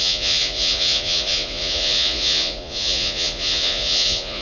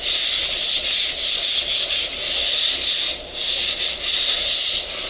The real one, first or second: second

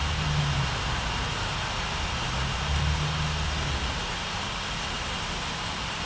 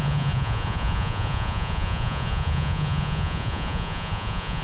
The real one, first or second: first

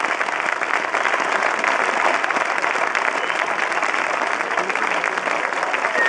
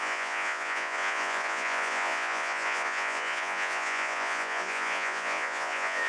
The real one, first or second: first